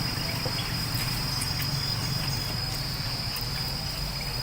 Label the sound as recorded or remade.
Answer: recorded